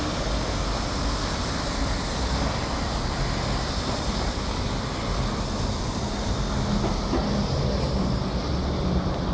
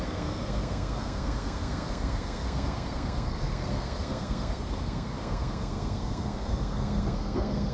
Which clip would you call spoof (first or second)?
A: second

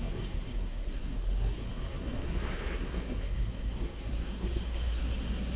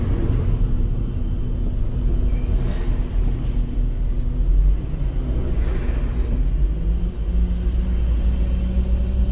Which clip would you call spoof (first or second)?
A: first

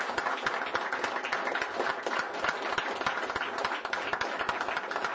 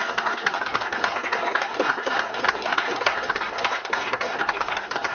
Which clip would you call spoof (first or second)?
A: second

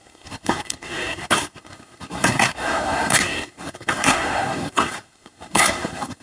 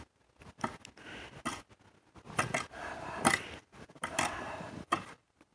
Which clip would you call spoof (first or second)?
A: first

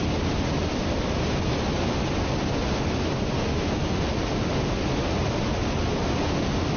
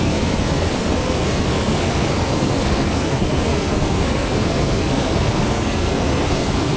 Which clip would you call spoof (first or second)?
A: second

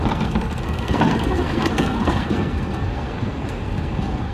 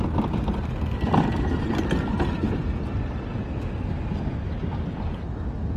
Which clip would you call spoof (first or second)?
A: first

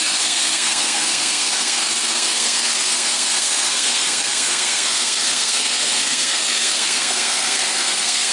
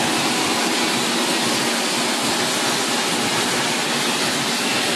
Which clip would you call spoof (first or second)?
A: first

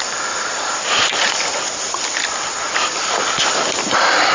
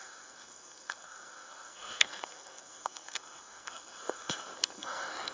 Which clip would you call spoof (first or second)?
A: second